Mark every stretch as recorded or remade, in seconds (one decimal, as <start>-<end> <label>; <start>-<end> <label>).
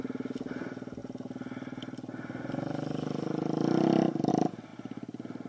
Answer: 0.0-5.5 recorded